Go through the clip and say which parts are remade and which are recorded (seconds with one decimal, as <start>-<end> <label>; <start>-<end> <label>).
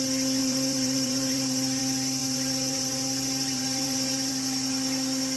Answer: 0.0-0.4 recorded; 0.4-1.8 remade; 1.8-2.2 recorded; 2.2-4.3 remade; 4.3-5.4 recorded